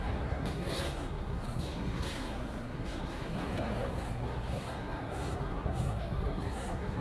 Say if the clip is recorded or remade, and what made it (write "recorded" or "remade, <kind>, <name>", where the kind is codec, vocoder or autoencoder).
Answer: remade, codec, SNAC